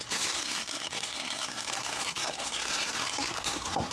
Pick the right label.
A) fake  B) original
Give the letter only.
A